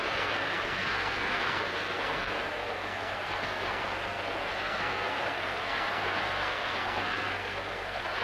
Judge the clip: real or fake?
fake